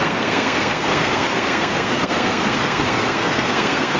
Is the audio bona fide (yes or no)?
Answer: no